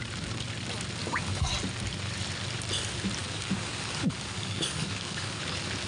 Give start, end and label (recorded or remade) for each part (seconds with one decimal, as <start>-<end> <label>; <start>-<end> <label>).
0.0-1.0 recorded; 1.0-1.5 remade; 1.5-3.2 recorded; 3.2-5.4 remade; 5.4-5.9 recorded